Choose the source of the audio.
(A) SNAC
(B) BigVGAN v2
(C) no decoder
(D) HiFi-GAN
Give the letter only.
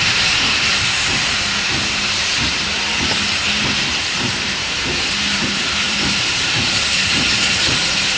B